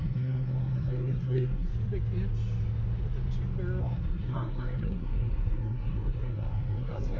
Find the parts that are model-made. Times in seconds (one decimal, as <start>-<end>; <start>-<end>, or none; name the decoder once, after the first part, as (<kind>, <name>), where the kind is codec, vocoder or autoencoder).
0.0-1.7 (codec, SNAC); 3.8-7.2